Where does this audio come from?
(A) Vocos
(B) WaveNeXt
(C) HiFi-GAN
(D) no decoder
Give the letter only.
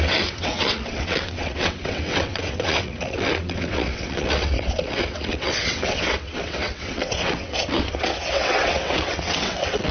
B